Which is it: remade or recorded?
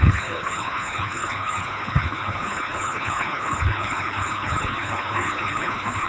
remade